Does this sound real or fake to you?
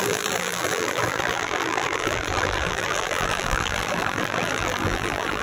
fake